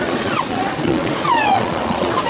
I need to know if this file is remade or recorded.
remade